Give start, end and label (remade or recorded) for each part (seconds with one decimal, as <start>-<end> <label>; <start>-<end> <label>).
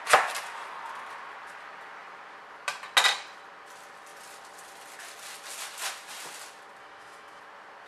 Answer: 0.0-6.8 recorded; 6.8-7.4 remade; 7.4-7.9 recorded